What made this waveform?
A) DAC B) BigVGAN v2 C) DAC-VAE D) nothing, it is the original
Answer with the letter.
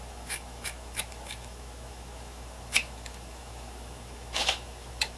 C